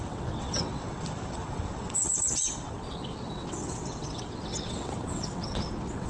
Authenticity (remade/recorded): remade